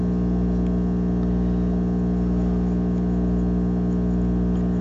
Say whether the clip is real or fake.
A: real